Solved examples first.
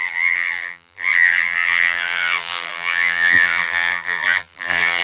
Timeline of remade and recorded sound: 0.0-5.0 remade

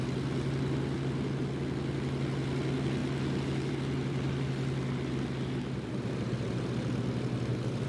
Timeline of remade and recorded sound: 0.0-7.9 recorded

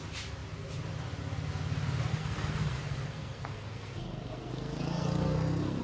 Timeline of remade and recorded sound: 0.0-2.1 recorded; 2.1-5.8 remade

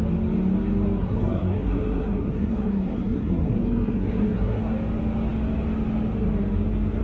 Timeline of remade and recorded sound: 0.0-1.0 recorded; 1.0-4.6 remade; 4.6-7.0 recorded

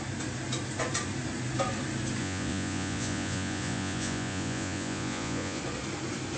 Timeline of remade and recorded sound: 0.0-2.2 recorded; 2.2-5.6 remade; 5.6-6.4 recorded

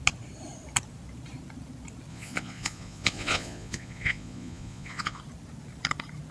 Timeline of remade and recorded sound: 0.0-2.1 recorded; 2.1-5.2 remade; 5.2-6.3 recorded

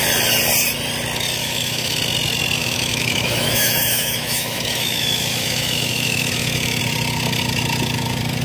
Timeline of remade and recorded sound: 0.0-1.4 recorded; 1.4-2.0 remade; 2.0-2.6 recorded; 2.6-6.8 remade; 6.8-8.4 recorded

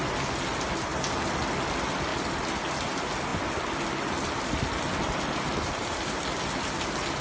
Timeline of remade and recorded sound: 0.0-3.3 recorded; 3.3-6.8 remade; 6.8-7.2 recorded